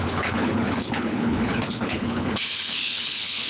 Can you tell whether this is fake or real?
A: fake